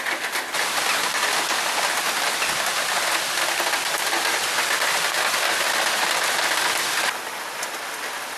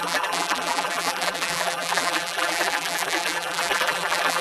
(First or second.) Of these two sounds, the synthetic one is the second